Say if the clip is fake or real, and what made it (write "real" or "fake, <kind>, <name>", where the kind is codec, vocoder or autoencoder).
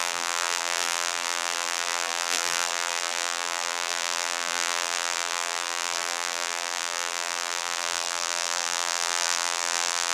fake, vocoder, BigVGAN v2